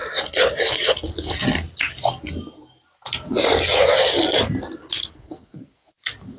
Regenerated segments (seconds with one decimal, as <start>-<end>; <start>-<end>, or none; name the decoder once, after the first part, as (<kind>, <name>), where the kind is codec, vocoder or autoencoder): 5.0-5.9 (codec, SNAC)